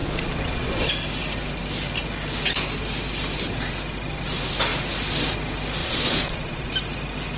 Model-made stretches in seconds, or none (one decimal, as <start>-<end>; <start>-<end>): 0.0-0.9; 5.8-6.7